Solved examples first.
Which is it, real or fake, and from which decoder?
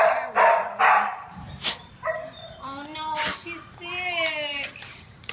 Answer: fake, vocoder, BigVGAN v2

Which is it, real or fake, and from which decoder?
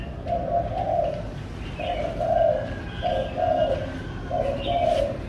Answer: real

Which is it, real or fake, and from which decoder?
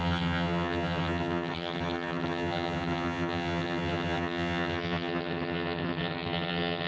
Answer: fake, vocoder, HiFi-GAN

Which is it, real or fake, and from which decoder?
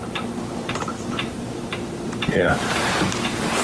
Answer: fake, vocoder, BigVGAN v2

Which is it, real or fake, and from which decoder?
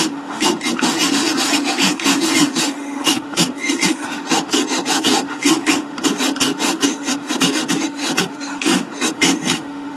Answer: fake, autoencoder, DAC-VAE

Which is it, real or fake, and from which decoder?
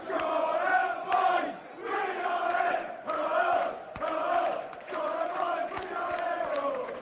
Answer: fake, vocoder, Vocos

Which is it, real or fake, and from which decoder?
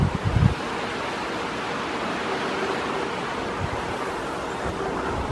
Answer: real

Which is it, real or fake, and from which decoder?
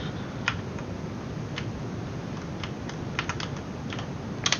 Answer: real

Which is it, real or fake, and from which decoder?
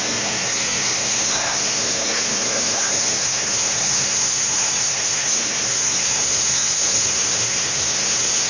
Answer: fake, codec, SNAC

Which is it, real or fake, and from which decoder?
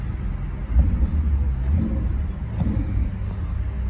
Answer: real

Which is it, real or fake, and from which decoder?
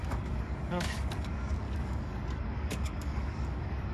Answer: fake, codec, DAC